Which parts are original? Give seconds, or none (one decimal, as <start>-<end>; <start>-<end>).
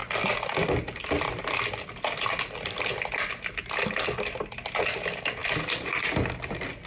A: 0.0-6.9